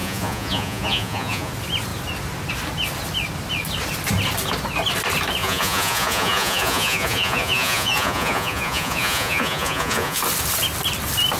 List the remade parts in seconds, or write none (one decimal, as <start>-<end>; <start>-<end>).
0.0-1.5; 5.4-10.2